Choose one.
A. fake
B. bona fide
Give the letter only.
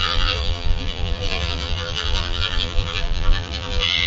A